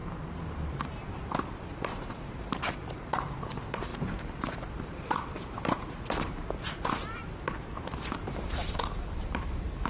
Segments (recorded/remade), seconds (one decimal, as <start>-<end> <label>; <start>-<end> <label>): 0.0-3.9 remade; 3.9-4.6 recorded; 4.6-5.3 remade; 5.3-6.2 recorded; 6.2-7.2 remade; 7.2-8.0 recorded; 8.0-9.9 remade